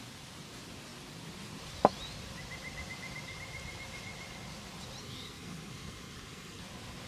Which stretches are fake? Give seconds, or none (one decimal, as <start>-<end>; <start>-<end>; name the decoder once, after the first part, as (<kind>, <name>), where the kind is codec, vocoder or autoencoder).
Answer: 5.0-6.6 (codec, SNAC)